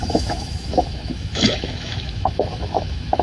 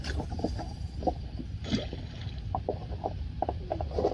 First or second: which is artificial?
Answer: first